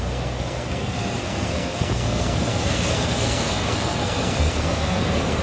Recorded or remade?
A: remade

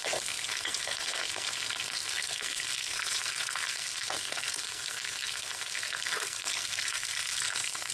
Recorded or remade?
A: remade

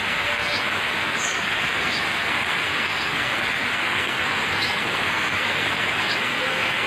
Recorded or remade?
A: remade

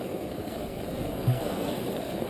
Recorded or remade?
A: remade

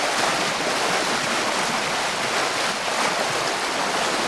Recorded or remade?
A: recorded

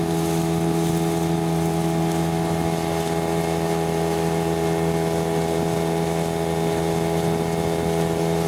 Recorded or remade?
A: recorded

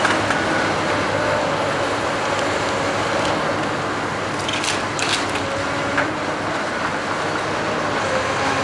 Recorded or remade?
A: recorded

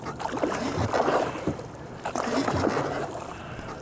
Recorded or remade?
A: recorded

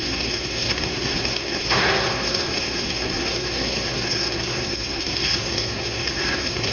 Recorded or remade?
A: remade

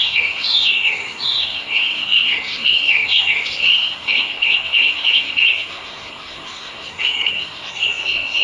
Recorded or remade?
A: remade